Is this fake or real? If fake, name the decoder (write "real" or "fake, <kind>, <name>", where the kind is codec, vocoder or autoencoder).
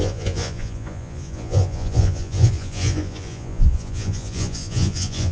fake, vocoder, Vocos